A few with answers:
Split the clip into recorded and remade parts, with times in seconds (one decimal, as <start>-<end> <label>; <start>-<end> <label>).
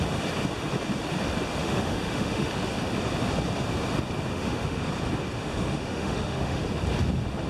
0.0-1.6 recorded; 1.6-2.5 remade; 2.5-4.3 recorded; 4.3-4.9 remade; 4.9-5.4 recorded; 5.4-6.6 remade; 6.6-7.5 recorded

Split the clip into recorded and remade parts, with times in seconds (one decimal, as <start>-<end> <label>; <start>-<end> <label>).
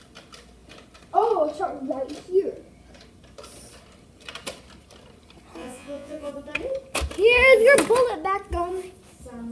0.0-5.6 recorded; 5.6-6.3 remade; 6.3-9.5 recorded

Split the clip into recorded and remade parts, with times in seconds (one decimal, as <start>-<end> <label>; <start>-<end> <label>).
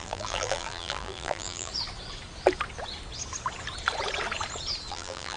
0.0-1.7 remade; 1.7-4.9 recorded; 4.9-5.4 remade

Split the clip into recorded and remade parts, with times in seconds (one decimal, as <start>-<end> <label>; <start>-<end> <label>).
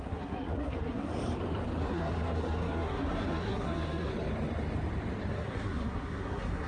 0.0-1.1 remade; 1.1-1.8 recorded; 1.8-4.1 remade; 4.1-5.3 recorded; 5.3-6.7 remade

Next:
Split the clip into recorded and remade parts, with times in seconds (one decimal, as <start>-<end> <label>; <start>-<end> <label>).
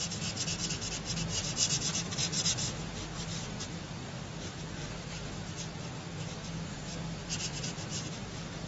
0.0-8.7 recorded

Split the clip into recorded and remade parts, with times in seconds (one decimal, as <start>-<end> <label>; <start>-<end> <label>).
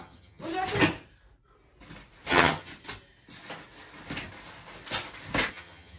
0.0-0.4 remade; 0.4-2.3 recorded; 2.3-2.7 remade; 2.7-5.5 recorded; 5.5-6.0 remade